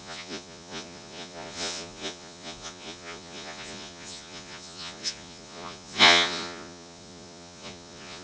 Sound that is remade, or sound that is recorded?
remade